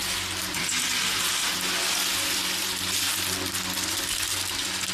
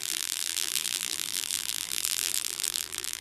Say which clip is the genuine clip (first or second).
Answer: first